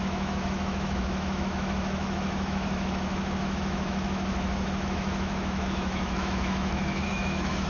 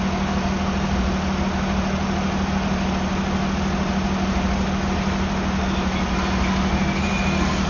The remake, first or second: first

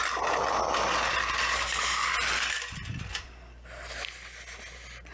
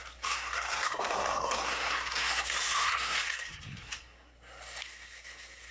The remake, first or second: second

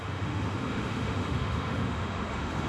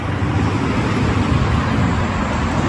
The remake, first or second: first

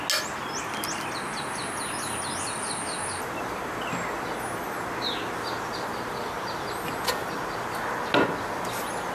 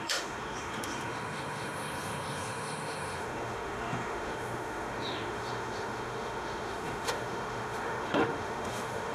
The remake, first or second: second